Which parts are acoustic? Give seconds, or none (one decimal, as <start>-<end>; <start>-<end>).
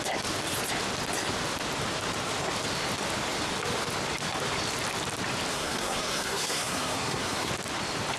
0.0-5.5; 7.5-8.2